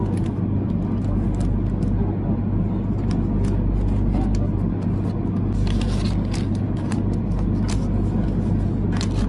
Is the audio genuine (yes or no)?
yes